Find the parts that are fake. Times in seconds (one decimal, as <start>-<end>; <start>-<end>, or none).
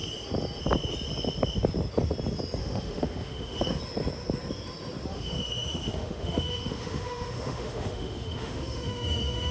2.6-3.8; 5.1-9.5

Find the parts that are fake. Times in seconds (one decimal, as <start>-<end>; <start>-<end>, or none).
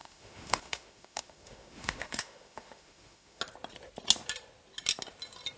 0.0-3.4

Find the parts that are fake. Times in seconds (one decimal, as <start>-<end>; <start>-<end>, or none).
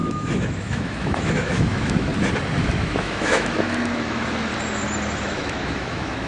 0.0-2.1; 2.6-4.5; 5.2-6.3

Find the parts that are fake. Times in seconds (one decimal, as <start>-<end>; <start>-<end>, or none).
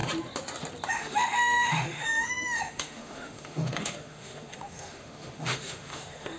0.9-6.4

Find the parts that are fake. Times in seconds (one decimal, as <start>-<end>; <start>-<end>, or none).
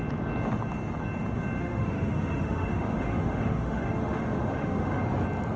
1.6-5.0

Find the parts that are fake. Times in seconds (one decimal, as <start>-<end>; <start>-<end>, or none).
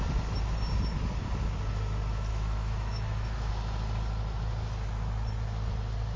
2.3-3.5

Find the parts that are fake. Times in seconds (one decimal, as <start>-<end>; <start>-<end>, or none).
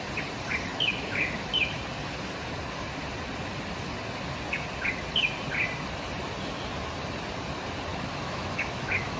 0.7-1.8; 7.9-9.2